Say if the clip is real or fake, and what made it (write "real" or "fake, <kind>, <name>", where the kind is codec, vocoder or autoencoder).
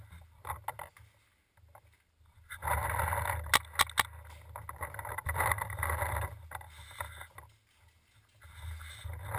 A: real